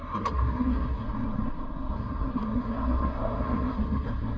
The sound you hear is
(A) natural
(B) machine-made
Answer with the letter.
B